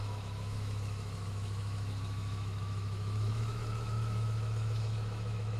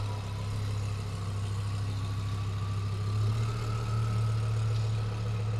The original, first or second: second